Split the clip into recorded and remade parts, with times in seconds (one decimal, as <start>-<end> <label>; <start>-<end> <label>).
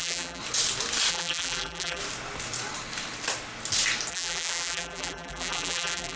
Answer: 0.0-0.4 remade; 0.4-1.1 recorded; 1.1-2.0 remade; 2.0-4.1 recorded; 4.1-6.2 remade